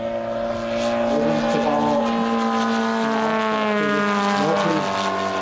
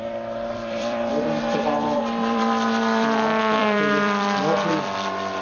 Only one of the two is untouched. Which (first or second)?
first